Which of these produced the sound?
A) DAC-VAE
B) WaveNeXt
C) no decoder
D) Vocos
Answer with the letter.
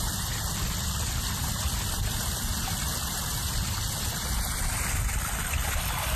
C